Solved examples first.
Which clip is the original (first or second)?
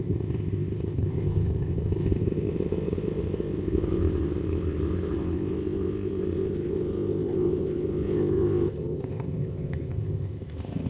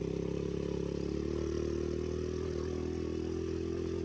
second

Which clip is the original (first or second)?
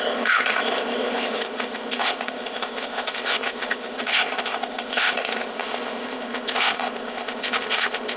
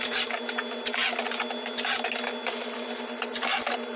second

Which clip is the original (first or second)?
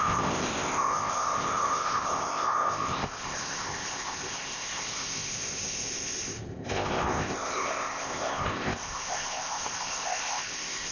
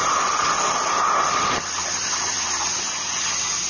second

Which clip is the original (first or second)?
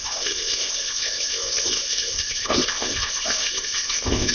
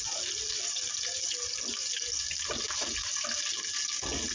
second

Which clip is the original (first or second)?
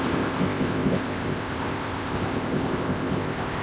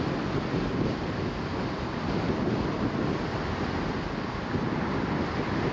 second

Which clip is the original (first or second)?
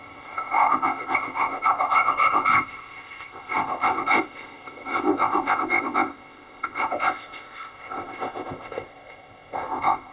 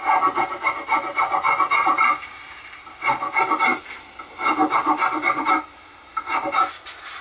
second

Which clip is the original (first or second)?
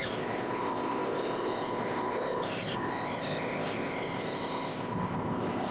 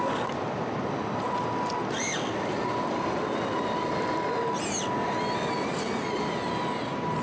second